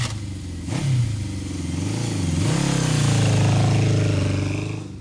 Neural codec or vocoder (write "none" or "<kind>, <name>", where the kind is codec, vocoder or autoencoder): none